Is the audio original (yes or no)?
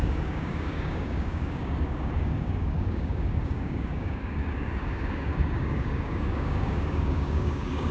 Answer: no